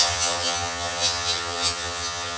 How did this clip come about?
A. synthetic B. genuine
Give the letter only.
A